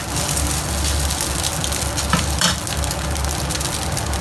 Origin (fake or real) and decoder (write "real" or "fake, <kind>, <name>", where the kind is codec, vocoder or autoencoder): real